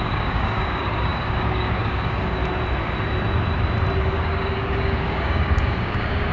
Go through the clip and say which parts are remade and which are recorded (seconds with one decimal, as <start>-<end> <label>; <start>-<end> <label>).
0.0-2.4 remade; 2.4-4.0 recorded; 4.0-6.3 remade